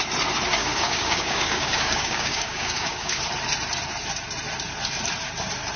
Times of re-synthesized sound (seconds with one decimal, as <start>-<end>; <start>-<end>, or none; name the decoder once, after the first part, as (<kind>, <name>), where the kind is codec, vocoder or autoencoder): 0.6-3.2 (codec, DAC)